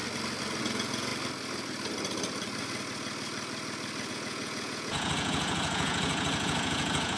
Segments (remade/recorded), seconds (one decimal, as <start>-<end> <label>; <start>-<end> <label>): 0.0-0.6 recorded; 0.6-1.1 remade; 1.1-4.1 recorded; 4.1-7.2 remade